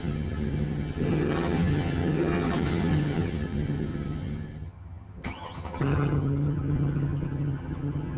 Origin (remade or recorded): remade